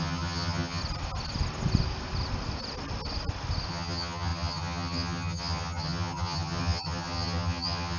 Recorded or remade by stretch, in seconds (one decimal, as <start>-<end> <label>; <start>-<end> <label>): 0.0-0.8 remade; 0.8-3.7 recorded; 3.7-8.0 remade